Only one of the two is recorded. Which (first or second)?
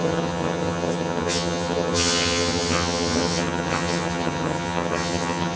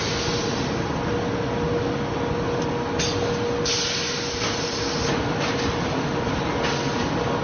second